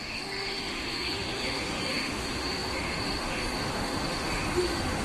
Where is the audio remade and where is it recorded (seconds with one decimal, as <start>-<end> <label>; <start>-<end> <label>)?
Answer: 0.0-5.0 remade